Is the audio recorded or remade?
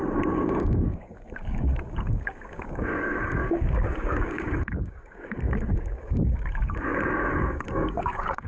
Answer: remade